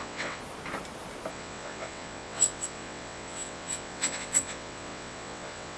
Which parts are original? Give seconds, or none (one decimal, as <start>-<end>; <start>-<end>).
0.4-1.3